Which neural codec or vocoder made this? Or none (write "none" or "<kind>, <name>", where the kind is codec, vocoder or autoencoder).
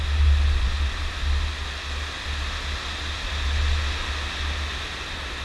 none